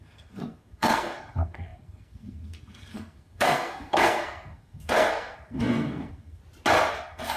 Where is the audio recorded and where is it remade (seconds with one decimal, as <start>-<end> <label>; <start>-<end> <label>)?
0.0-6.4 remade; 6.4-6.9 recorded; 6.9-7.4 remade